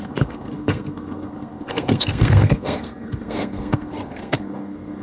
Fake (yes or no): yes